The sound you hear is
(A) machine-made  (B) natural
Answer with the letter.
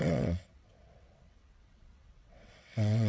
A